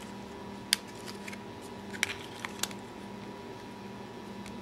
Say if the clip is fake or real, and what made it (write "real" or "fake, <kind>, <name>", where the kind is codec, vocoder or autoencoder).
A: real